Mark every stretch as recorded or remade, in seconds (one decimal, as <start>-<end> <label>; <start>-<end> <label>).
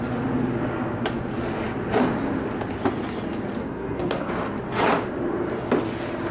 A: 0.0-3.6 recorded; 3.6-4.3 remade; 4.3-6.3 recorded